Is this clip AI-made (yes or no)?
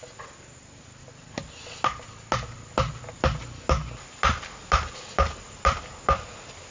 no